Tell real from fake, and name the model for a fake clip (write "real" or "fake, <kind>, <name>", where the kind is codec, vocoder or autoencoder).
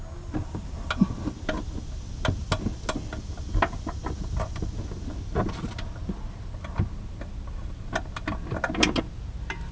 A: real